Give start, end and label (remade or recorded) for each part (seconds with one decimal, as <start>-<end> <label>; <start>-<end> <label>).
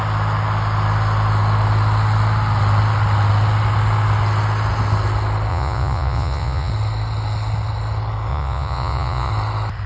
0.0-5.5 recorded; 5.5-6.7 remade; 6.7-8.3 recorded; 8.3-9.3 remade; 9.3-9.9 recorded